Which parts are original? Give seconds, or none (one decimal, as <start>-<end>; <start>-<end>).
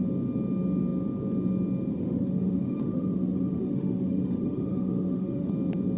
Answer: 0.0-1.9; 5.5-6.0